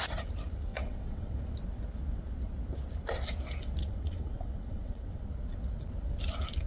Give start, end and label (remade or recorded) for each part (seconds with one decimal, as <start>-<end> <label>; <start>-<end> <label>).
0.0-0.7 recorded; 0.7-1.4 remade; 1.4-3.8 recorded; 3.8-5.2 remade; 5.2-6.7 recorded

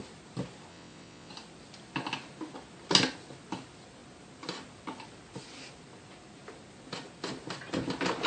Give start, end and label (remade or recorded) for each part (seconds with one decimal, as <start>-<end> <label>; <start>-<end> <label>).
0.0-0.7 recorded; 0.7-1.3 remade; 1.3-8.3 recorded

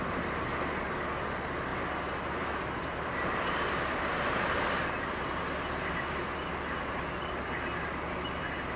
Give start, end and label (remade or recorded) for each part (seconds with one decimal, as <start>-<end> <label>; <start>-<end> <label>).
0.0-8.8 recorded